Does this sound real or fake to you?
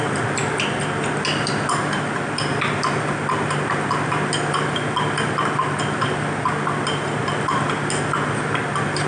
real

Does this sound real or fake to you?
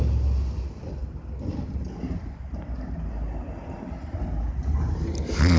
real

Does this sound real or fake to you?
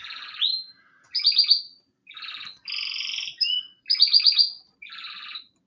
fake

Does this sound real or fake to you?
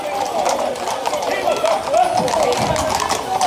real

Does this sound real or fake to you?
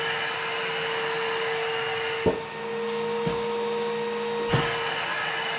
real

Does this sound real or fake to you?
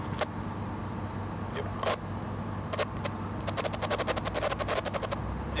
real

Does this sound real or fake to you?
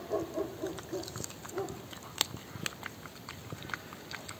real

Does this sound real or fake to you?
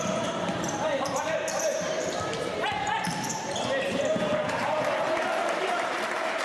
fake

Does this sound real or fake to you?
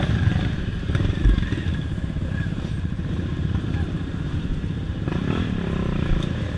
fake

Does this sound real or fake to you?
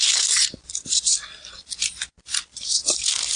fake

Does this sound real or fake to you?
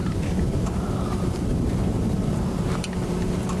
fake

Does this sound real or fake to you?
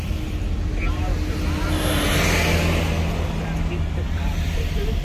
real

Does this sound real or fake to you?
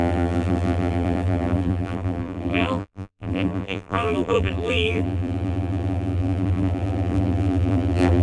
fake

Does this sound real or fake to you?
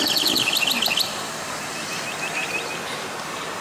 real